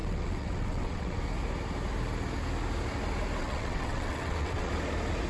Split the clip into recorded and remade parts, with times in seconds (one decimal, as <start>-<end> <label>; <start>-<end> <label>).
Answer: 0.0-1.2 remade; 1.2-3.4 recorded; 3.4-4.7 remade; 4.7-5.3 recorded